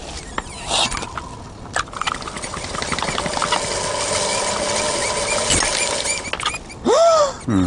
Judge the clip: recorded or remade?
recorded